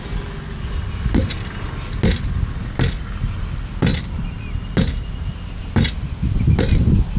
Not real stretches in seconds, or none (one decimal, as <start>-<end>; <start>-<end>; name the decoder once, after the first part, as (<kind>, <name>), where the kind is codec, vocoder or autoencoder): none